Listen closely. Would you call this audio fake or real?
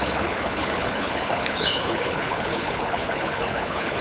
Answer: fake